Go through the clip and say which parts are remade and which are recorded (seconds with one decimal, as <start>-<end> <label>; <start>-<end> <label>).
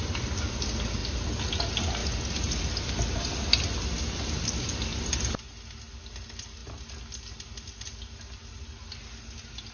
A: 0.0-9.7 recorded